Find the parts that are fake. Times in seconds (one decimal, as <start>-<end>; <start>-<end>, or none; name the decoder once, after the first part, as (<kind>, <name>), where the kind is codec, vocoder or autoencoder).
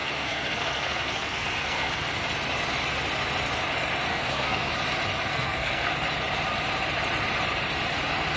0.0-1.9 (codec, SNAC); 4.1-4.7; 5.3-5.9